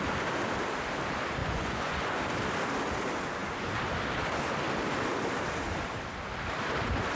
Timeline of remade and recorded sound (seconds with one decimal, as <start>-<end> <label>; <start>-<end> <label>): 0.0-1.4 recorded; 1.4-2.2 remade; 2.2-7.2 recorded